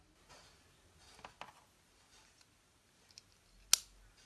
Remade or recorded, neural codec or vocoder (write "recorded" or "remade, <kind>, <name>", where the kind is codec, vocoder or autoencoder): recorded